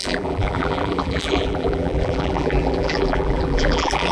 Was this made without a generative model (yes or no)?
no